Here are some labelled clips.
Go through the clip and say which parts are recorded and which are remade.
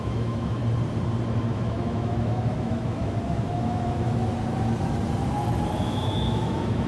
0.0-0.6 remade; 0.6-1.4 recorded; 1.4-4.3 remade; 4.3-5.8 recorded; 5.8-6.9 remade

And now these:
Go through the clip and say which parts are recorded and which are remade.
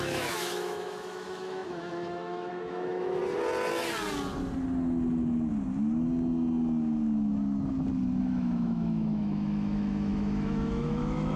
0.0-3.2 remade; 3.2-8.2 recorded; 8.2-11.4 remade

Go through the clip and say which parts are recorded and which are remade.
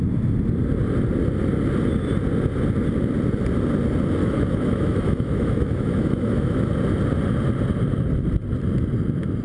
0.0-4.2 recorded; 4.2-6.7 remade; 6.7-9.4 recorded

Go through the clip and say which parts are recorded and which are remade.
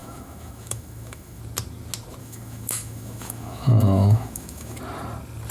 0.0-1.4 remade; 1.4-2.2 recorded; 2.2-4.8 remade; 4.8-5.5 recorded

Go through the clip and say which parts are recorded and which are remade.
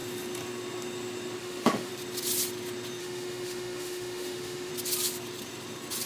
0.0-1.4 recorded; 1.4-1.9 remade; 1.9-3.0 recorded; 3.0-4.7 remade; 4.7-6.1 recorded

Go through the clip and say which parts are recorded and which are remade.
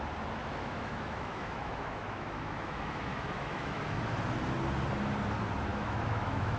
0.0-0.4 recorded; 0.4-4.0 remade; 4.0-5.7 recorded; 5.7-6.6 remade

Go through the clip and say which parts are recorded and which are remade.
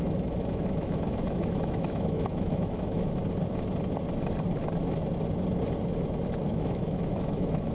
0.0-3.2 remade; 3.2-6.4 recorded; 6.4-7.7 remade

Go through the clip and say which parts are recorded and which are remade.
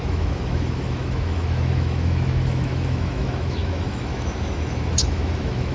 0.0-5.7 remade